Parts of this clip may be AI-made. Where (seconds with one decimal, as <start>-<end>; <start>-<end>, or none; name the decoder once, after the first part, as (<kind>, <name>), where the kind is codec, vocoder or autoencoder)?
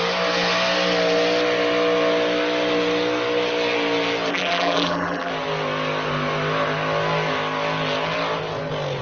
4.3-5.3 (vocoder, BigVGAN v2)